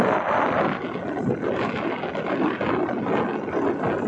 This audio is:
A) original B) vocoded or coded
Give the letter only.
A